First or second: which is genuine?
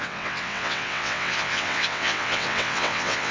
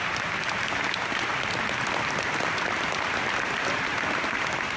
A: second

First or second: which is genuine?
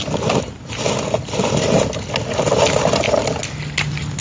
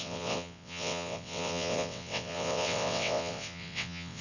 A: first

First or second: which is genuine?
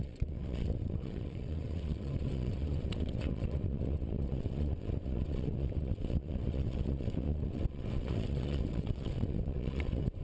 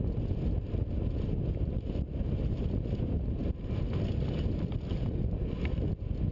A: second